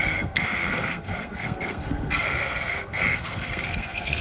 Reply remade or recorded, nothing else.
remade